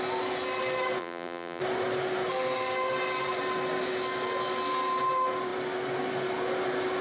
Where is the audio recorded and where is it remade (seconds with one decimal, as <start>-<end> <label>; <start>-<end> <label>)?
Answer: 0.0-1.0 recorded; 1.0-1.6 remade; 1.6-7.0 recorded